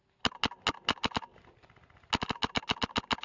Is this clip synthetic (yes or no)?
no